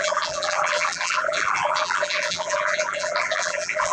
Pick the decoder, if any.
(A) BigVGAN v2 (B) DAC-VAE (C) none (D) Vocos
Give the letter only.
A